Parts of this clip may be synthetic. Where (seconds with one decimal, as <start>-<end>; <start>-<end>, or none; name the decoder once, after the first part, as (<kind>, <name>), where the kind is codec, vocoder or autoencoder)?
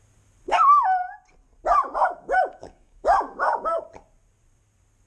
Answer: 2.0-3.8 (autoencoder, DAC-VAE)